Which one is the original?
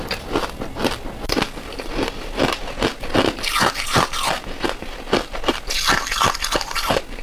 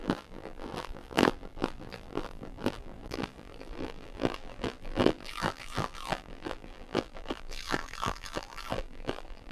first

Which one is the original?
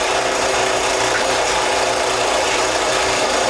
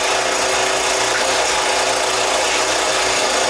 second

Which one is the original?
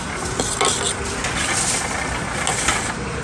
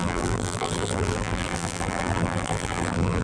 first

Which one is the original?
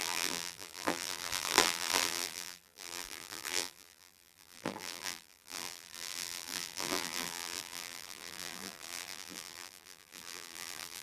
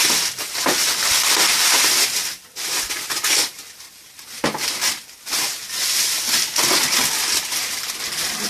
second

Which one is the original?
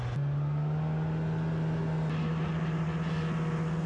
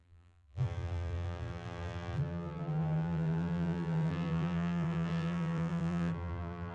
first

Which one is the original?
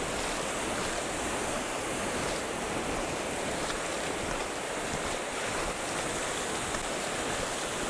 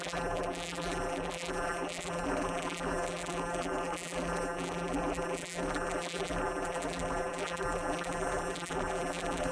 first